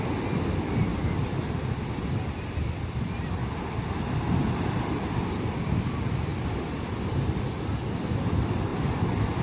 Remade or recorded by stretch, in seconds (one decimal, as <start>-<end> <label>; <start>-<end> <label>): 0.0-9.4 recorded